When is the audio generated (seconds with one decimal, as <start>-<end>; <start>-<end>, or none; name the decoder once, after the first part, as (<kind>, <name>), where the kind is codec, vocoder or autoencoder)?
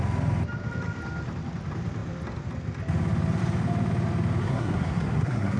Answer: 4.4-5.6 (codec, SNAC)